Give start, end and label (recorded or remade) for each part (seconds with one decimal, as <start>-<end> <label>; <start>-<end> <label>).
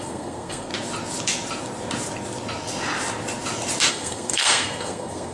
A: 0.0-0.7 remade; 0.7-3.9 recorded; 3.9-5.3 remade